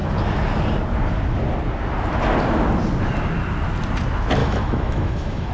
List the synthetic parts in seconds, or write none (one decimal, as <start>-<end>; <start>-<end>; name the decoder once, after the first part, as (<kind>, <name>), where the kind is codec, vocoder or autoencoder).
4.4-5.5 (autoencoder, DAC-VAE)